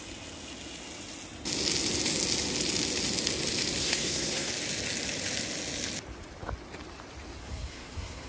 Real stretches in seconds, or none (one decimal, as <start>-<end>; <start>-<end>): 0.0-3.8; 4.5-7.4